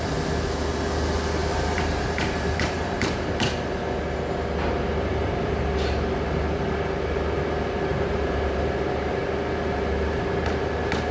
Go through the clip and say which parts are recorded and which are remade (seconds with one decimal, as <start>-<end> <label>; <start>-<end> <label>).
0.0-1.4 recorded; 1.4-3.3 remade; 3.3-7.9 recorded; 7.9-9.2 remade; 9.2-11.1 recorded